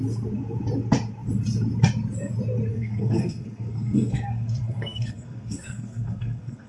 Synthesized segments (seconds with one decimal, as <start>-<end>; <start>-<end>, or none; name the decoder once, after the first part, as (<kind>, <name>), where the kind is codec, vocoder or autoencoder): 2.7-6.7 (codec, SNAC)